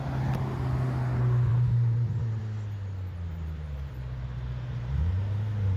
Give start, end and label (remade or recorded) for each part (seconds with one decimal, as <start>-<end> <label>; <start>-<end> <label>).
0.0-1.5 recorded; 1.5-2.4 remade; 2.4-3.3 recorded; 3.3-4.2 remade; 4.2-5.8 recorded